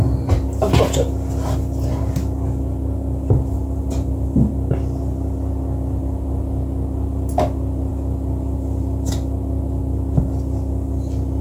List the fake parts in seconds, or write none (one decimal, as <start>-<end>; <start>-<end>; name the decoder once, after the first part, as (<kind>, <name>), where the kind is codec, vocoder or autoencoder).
none